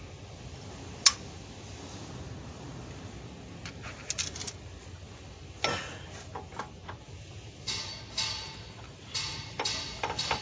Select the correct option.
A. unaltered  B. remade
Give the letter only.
A